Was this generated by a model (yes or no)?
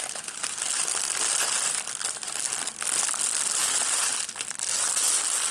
no